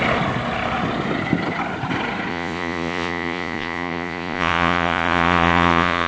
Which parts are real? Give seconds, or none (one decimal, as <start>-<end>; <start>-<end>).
0.0-2.3

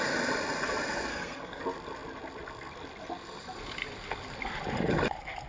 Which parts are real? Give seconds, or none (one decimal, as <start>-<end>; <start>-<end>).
0.0-1.1; 1.6-5.5